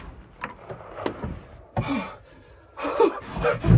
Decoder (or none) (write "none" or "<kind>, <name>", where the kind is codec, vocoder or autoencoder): none